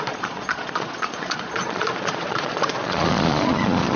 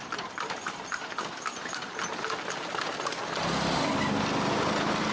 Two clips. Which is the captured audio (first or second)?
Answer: second